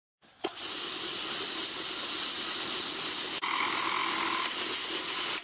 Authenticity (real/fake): real